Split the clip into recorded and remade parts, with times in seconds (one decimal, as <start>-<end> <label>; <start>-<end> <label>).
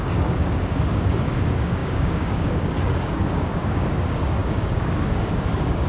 0.0-5.9 remade